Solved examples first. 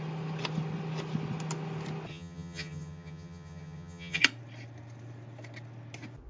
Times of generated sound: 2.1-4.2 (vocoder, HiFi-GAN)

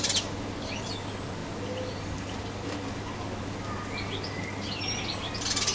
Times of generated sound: none

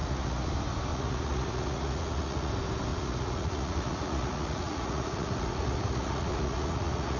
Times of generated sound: 0.0-0.5 (vocoder, Vocos); 0.9-2.5; 2.9-7.2

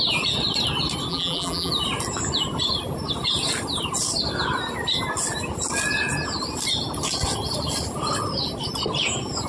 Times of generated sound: 1.1-1.7 (vocoder, BigVGAN v2)

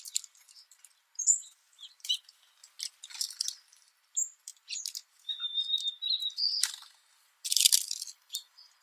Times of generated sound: 0.0-2.6 (vocoder, BigVGAN v2); 3.2-8.8

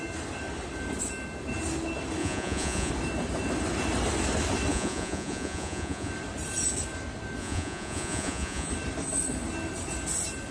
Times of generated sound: 2.2-2.9 (vocoder, Vocos); 4.7-6.1; 7.4-8.7